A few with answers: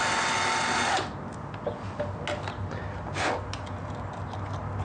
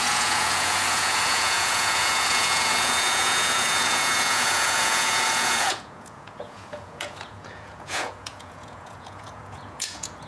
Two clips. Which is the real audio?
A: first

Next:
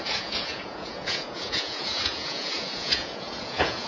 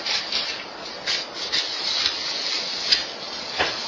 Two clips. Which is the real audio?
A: second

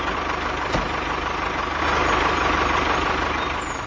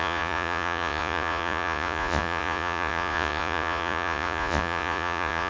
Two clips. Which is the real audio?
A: first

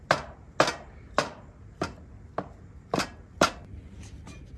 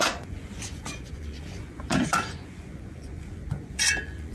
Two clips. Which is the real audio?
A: first